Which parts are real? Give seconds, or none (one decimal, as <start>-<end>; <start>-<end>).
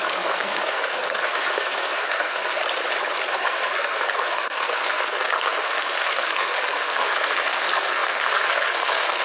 2.6-3.3